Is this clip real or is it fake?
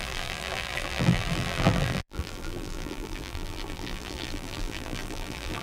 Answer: fake